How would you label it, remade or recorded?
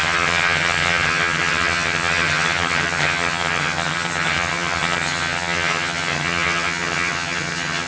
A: remade